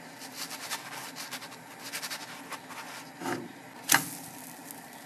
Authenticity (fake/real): real